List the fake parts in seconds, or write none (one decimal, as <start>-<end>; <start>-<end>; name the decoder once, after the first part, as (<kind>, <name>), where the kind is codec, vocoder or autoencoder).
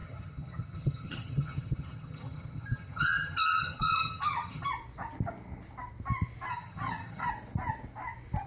0.0-4.7 (vocoder, HiFi-GAN); 6.5-7.3